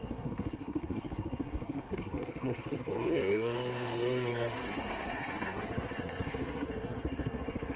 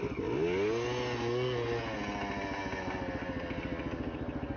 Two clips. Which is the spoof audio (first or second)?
first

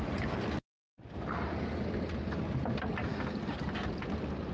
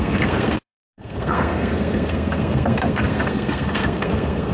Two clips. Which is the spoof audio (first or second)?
second